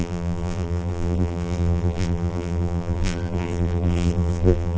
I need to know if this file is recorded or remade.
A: remade